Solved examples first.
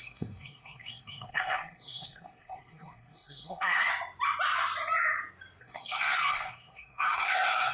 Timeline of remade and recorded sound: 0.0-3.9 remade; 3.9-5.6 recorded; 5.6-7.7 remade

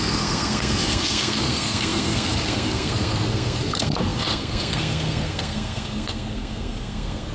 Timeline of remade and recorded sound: 0.0-7.3 remade

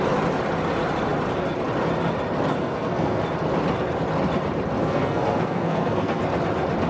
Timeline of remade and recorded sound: 0.0-2.6 recorded; 2.6-3.2 remade; 3.2-4.8 recorded; 4.8-6.2 remade; 6.2-6.9 recorded

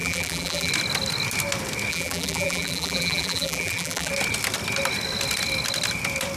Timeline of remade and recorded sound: 0.0-0.7 remade; 0.7-1.9 recorded; 1.9-4.1 remade; 4.1-6.4 recorded

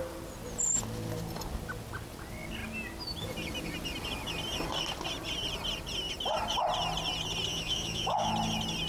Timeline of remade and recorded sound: 0.0-7.5 recorded; 7.5-8.3 remade; 8.3-8.9 recorded

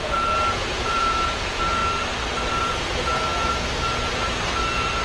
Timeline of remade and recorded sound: 0.0-1.8 remade; 1.8-2.6 recorded; 2.6-5.0 remade

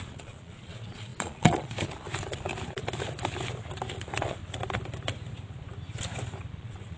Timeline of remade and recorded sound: 0.0-2.5 remade; 2.5-3.9 recorded; 3.9-4.4 remade; 4.4-6.5 recorded; 6.5-7.0 remade

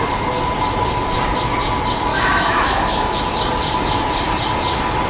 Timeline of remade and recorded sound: 0.0-2.1 recorded; 2.1-3.2 remade; 3.2-5.1 recorded